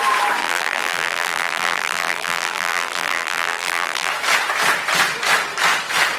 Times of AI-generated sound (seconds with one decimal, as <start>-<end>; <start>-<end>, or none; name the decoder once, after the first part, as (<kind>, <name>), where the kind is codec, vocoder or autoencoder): 0.4-4.1 (vocoder, BigVGAN v2)